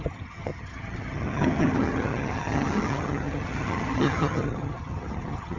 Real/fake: fake